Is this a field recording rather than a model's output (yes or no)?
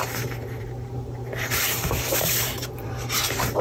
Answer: no